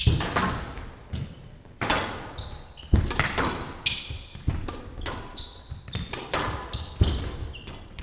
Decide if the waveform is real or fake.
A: real